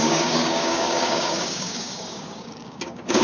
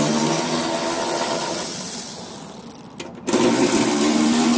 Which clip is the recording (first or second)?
second